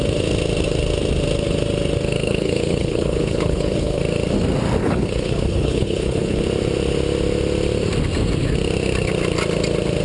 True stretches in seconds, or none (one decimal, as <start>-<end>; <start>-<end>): 0.0-2.2; 4.0-4.8; 6.4-10.0